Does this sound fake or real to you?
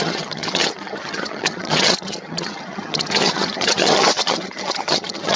fake